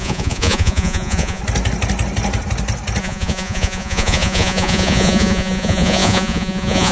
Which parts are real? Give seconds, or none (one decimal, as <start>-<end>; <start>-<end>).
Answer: 1.4-3.0